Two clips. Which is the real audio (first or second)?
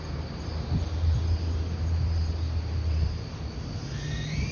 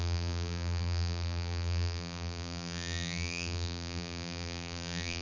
first